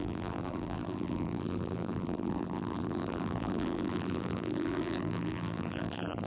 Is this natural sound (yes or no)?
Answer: no